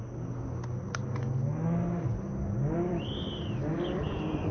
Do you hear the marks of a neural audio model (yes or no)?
no